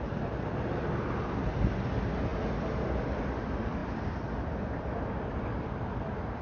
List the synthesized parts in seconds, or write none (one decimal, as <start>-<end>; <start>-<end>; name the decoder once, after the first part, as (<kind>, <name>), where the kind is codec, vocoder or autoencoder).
none